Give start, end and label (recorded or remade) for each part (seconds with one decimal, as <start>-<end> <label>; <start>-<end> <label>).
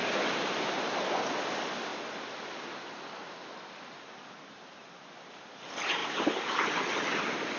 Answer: 0.0-7.6 recorded